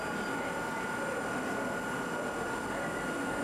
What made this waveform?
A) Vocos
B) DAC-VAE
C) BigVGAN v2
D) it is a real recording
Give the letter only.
D